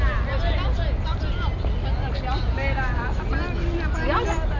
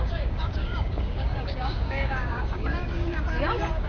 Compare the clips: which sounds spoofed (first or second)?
second